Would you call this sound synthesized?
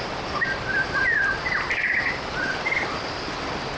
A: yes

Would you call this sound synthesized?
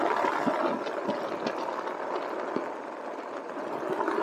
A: no